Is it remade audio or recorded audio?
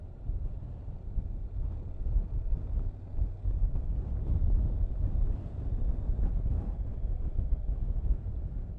recorded